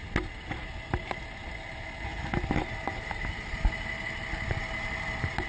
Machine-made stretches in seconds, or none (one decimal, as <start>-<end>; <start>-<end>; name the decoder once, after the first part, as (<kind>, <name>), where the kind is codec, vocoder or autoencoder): none